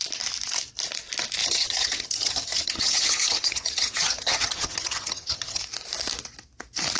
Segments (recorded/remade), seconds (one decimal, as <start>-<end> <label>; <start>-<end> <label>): 0.0-1.4 recorded; 1.4-5.6 remade; 5.6-7.0 recorded